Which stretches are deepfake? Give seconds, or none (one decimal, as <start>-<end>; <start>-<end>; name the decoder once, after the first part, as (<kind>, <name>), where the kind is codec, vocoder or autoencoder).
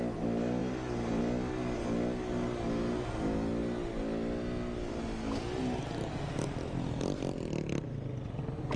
none